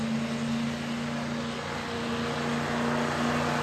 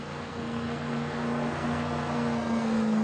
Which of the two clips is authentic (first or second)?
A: first